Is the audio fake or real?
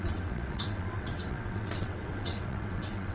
fake